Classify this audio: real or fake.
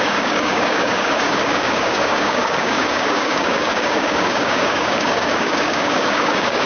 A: fake